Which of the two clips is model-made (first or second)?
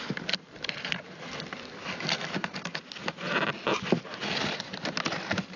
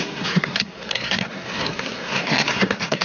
second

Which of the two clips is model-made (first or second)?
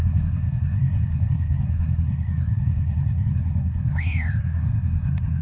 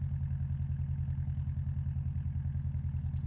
first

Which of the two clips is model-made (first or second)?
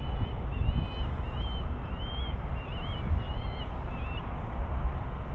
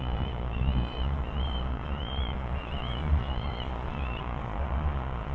second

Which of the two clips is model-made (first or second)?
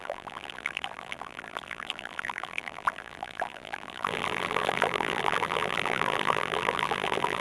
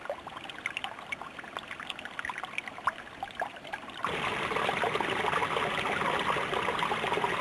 first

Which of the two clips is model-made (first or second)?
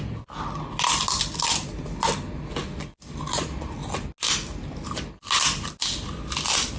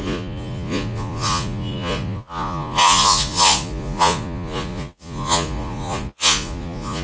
second